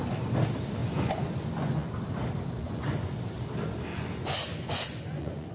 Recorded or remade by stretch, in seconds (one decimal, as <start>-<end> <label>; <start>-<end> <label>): 0.0-0.8 recorded; 0.8-1.9 remade; 1.9-2.6 recorded; 2.6-3.2 remade; 3.2-3.9 recorded; 3.9-5.5 remade